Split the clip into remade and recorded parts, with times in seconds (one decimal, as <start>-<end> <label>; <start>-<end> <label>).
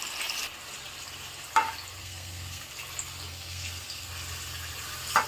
0.0-2.0 recorded; 2.0-2.7 remade; 2.7-3.3 recorded; 3.3-4.1 remade; 4.1-5.3 recorded